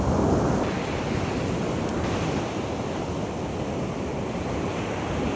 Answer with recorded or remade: recorded